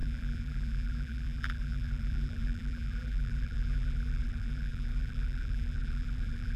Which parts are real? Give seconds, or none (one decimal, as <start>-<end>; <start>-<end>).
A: none